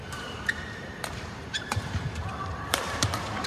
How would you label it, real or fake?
fake